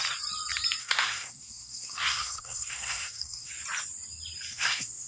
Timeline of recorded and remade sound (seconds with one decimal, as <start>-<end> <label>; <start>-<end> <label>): 0.0-0.8 recorded; 0.8-3.5 remade; 3.5-4.5 recorded; 4.5-5.1 remade